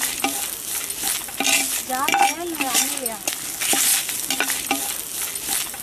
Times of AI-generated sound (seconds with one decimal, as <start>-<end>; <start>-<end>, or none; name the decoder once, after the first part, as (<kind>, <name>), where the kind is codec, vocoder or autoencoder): none

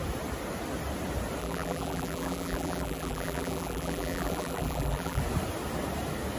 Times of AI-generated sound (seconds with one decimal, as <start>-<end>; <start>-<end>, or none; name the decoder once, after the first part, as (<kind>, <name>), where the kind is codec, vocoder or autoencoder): 1.4-5.2 (vocoder, BigVGAN v2)

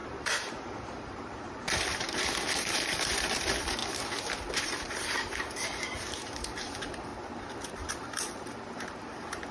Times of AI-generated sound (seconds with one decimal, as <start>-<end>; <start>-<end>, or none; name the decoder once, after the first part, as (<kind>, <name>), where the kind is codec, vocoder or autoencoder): 0.0-3.8 (vocoder, BigVGAN v2); 4.5-7.1; 7.7-9.5

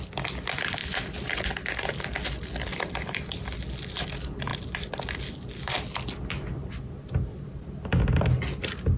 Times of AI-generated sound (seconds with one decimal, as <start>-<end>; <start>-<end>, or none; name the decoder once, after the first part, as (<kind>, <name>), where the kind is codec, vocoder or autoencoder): 0.8-2.0 (vocoder, BigVGAN v2); 4.5-5.1